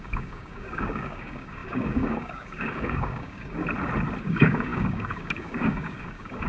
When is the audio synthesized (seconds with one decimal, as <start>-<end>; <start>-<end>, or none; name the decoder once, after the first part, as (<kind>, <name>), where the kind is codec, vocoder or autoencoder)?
0.0-3.6 (codec, DAC); 4.2-6.5